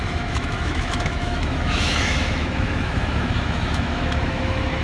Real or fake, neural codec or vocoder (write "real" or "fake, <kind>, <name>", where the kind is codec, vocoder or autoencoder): fake, autoencoder, DAC-VAE